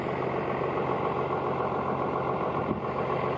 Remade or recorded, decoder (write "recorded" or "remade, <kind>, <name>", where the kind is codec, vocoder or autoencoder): recorded